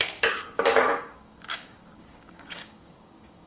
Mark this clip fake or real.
fake